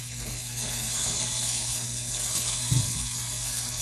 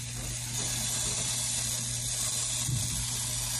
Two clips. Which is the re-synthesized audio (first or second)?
first